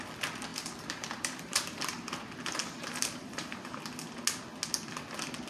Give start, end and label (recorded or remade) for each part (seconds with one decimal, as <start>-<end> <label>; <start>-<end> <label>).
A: 0.0-0.5 recorded; 0.5-3.8 remade; 3.8-5.5 recorded